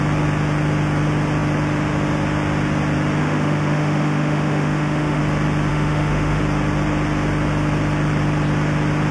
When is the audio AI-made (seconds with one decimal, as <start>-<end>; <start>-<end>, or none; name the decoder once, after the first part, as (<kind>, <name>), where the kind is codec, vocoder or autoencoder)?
3.2-5.2 (autoencoder, DAC-VAE); 5.7-6.4